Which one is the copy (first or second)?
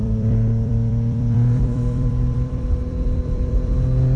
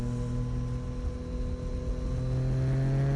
first